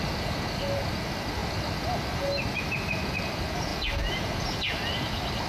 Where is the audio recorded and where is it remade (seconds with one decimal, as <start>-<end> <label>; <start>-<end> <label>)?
0.0-3.7 recorded; 3.7-4.4 remade; 4.4-5.5 recorded